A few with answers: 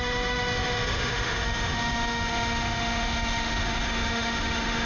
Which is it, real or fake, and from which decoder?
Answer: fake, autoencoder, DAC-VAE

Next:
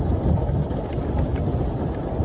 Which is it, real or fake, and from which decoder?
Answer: fake, vocoder, BigVGAN v2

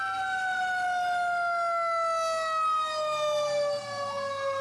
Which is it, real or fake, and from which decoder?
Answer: real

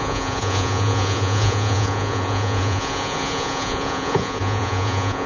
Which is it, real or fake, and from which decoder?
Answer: fake, vocoder, Vocos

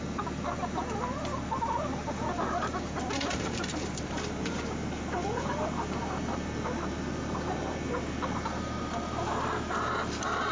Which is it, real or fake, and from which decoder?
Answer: fake, vocoder, BigVGAN v2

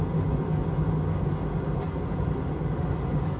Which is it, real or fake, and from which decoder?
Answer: real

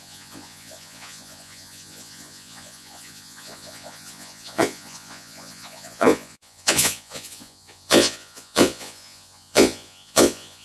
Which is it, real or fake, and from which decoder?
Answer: fake, vocoder, Vocos